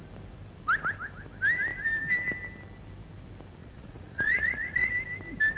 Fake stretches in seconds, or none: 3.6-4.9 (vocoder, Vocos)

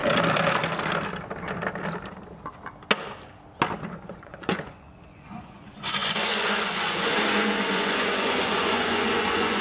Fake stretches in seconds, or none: 3.8-9.6 (vocoder, Vocos)

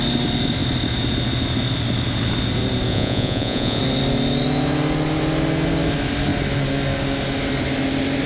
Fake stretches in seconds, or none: 2.9-3.8 (vocoder, Vocos)

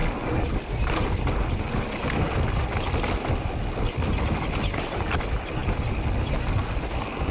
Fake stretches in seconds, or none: none

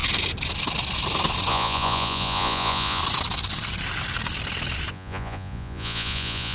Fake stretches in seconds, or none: 1.5-3.0 (vocoder, Vocos); 4.9-6.5

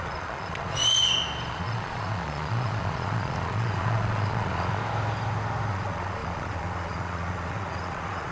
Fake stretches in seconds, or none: 0.0-0.8 (vocoder, Vocos); 1.5-4.8; 5.7-8.3

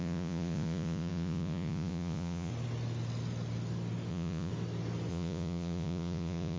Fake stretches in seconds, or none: 0.0-2.5 (vocoder, Vocos); 4.1-4.5; 5.1-6.6